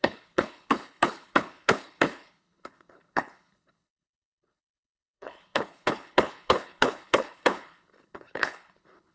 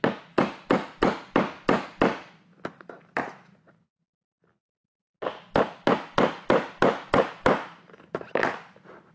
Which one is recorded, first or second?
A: second